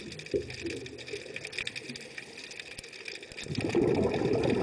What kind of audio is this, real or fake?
real